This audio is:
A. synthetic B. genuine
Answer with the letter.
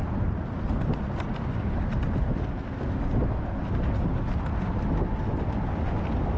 B